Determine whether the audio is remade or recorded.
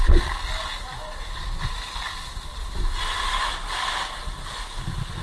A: recorded